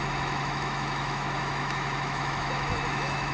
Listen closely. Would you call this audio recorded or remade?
remade